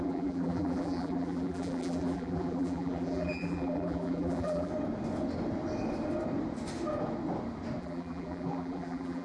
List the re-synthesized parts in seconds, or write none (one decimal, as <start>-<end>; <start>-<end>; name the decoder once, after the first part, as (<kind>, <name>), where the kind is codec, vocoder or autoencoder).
0.0-4.7 (vocoder, BigVGAN v2); 7.8-9.2